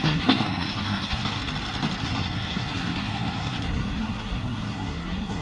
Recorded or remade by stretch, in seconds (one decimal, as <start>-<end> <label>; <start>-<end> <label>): 0.0-1.4 remade; 1.4-2.0 recorded; 2.0-5.4 remade